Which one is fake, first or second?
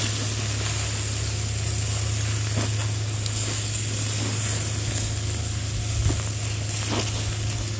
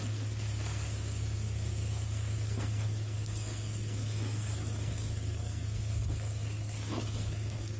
second